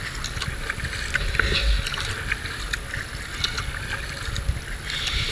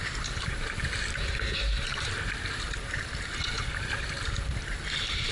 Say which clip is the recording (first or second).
first